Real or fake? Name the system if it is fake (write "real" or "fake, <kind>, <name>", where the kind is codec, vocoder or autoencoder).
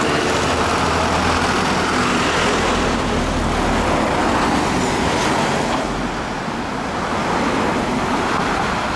real